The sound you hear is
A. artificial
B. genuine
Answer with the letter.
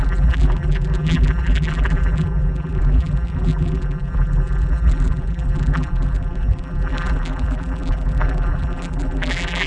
A